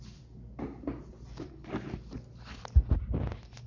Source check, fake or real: real